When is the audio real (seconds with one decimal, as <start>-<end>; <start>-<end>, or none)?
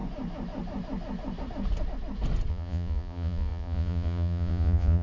0.0-2.5